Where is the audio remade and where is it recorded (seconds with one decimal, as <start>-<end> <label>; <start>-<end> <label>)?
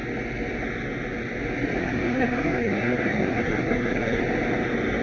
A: 0.0-1.8 recorded; 1.8-4.2 remade; 4.2-5.0 recorded